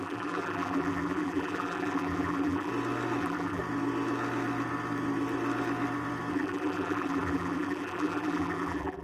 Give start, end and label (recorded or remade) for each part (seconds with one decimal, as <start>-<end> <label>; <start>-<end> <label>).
0.0-2.7 remade; 2.7-3.2 recorded; 3.2-3.6 remade; 3.6-6.3 recorded; 6.3-9.0 remade